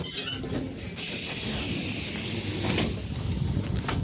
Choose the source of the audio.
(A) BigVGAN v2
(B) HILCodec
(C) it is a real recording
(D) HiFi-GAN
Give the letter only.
C